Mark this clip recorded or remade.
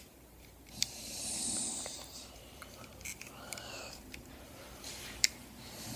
remade